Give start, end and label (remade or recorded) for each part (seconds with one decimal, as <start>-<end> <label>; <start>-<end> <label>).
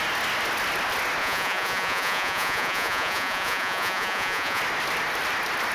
0.0-1.2 recorded; 1.2-4.6 remade; 4.6-5.7 recorded